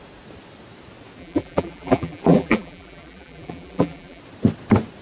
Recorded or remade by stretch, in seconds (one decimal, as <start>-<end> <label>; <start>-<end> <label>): 0.0-1.2 recorded; 1.2-4.2 remade; 4.2-5.0 recorded

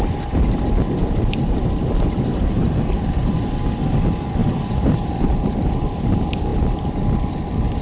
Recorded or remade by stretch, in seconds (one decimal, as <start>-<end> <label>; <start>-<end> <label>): 0.0-1.0 recorded; 1.0-3.5 remade; 3.5-4.4 recorded; 4.4-6.0 remade; 6.0-7.8 recorded

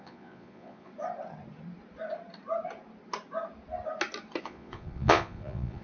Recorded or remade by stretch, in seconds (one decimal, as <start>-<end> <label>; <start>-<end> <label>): 0.0-0.9 remade; 0.9-4.4 recorded; 4.4-5.8 remade

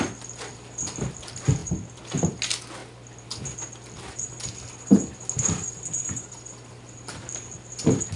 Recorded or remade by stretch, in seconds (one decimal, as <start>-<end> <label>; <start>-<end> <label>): 0.0-8.2 recorded

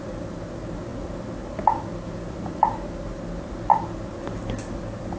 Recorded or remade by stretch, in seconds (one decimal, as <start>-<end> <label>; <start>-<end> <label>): 0.0-5.2 recorded

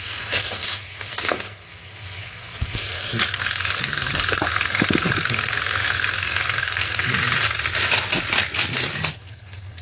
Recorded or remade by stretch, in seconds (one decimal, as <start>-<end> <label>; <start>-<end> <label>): 0.0-7.1 remade; 7.1-9.1 recorded; 9.1-9.8 remade

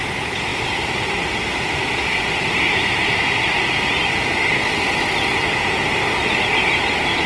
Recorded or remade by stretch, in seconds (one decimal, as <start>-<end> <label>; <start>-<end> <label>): 0.0-7.3 recorded

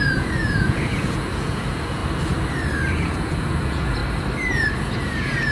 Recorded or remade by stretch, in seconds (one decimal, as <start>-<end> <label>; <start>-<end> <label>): 0.0-2.0 remade; 2.0-2.9 recorded; 2.9-4.0 remade; 4.0-4.7 recorded; 4.7-5.5 remade